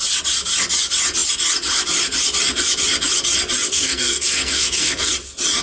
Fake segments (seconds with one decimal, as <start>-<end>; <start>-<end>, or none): 3.7-5.1